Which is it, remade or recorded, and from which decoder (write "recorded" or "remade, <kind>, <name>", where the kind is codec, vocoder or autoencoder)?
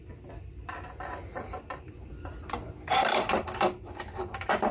remade, vocoder, BigVGAN v2